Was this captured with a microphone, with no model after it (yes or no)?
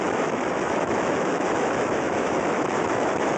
no